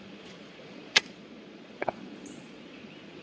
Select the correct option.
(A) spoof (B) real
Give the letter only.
A